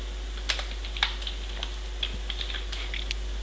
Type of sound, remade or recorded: recorded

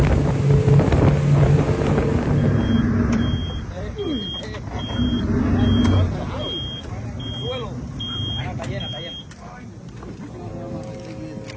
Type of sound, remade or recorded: recorded